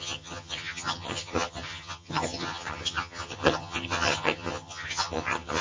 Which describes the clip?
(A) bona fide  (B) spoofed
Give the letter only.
B